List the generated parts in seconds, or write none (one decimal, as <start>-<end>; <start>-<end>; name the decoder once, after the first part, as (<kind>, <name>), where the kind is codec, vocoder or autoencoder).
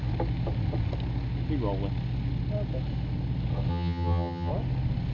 3.7-4.5 (vocoder, HiFi-GAN)